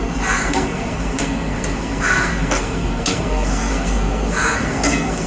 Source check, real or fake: fake